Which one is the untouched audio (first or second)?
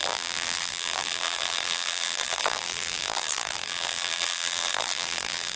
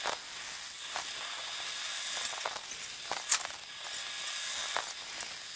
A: second